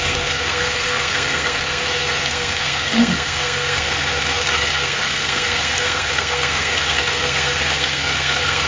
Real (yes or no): no